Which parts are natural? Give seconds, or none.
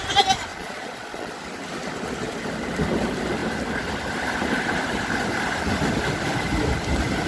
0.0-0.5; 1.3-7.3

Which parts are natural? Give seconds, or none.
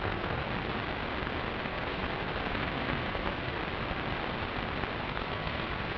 0.4-1.6; 2.0-2.5; 3.6-5.0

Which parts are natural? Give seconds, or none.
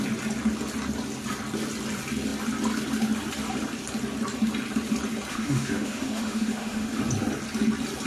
0.0-5.3; 7.0-8.1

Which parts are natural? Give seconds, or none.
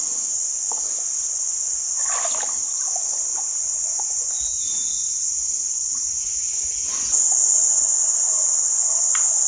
1.4-3.3; 7.7-9.5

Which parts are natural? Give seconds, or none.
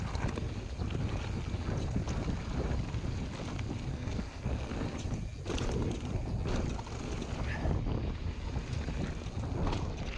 0.0-3.9; 4.7-10.2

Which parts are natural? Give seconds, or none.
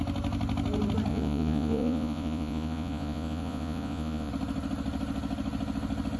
0.0-1.1; 4.3-6.2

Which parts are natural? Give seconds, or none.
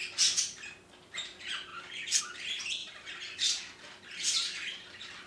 0.0-2.8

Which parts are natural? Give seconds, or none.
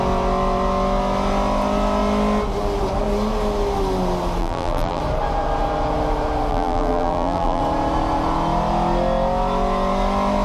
0.0-4.4; 5.0-6.5; 7.6-10.4